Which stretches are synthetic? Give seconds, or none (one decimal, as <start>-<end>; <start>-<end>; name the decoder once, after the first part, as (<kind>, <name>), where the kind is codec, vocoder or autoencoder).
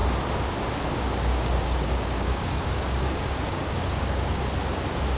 1.3-4.4 (codec, DAC)